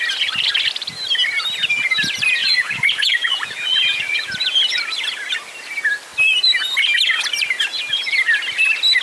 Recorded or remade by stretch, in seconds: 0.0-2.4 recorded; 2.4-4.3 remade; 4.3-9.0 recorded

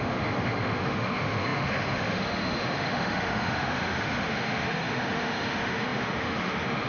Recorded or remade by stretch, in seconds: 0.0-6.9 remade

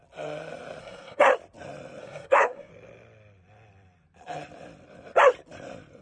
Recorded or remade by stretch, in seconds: 0.0-0.8 recorded; 0.8-1.3 remade; 1.3-2.0 recorded; 2.0-2.7 remade; 2.7-6.0 recorded

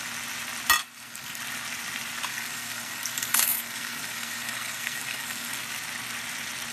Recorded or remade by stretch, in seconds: 0.0-0.8 recorded; 0.8-1.4 remade; 1.4-2.3 recorded; 2.3-5.6 remade; 5.6-6.7 recorded

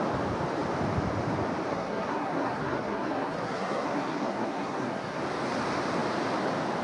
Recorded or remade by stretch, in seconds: 0.0-1.7 recorded; 1.7-5.2 remade; 5.2-6.8 recorded

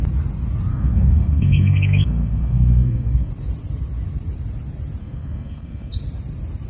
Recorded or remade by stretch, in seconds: 0.0-0.7 recorded; 0.7-3.3 remade; 3.3-5.0 recorded; 5.0-6.0 remade; 6.0-6.7 recorded

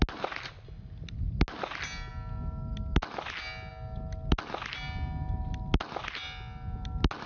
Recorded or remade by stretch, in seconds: 0.0-7.3 recorded

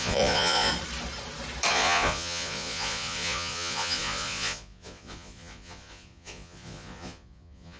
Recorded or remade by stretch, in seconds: 0.0-0.7 remade; 0.7-1.7 recorded; 1.7-7.8 remade